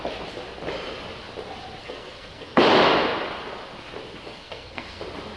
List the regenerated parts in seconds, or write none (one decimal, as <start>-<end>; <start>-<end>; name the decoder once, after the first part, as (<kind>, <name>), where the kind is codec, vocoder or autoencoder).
1.8-2.6 (codec, SNAC); 4.2-5.0